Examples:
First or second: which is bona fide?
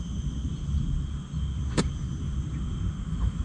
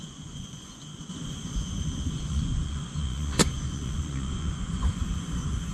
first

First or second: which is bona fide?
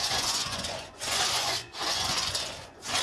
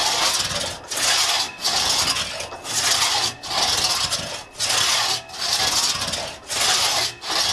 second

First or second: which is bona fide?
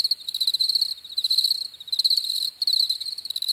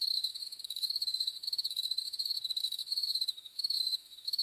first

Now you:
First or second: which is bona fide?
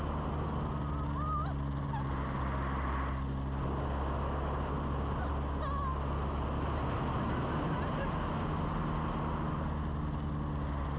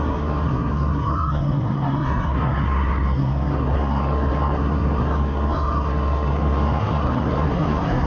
first